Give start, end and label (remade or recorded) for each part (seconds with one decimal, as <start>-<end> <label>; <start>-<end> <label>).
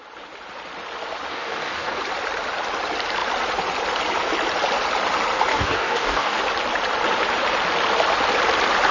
0.0-1.3 recorded; 1.3-2.0 remade; 2.0-5.5 recorded; 5.5-6.4 remade; 6.4-8.9 recorded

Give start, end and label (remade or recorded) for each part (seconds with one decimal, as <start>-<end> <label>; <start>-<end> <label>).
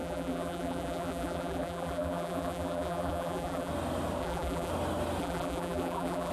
0.0-3.7 remade; 3.7-4.2 recorded; 4.2-4.7 remade; 4.7-5.2 recorded; 5.2-6.3 remade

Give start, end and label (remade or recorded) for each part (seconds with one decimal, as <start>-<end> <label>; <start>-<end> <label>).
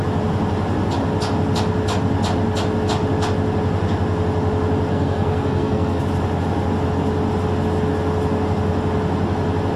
0.0-4.9 recorded; 4.9-6.0 remade; 6.0-9.8 recorded